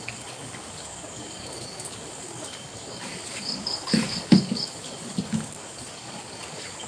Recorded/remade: remade